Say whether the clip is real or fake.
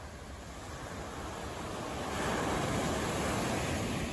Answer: real